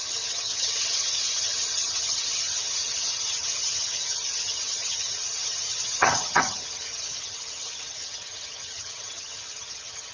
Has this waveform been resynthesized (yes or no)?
yes